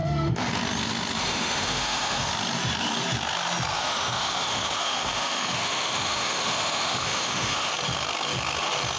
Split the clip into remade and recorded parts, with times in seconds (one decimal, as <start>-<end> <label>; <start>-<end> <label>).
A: 0.0-0.5 remade; 0.5-1.2 recorded; 1.2-2.3 remade; 2.3-3.7 recorded; 3.7-7.7 remade; 7.7-9.0 recorded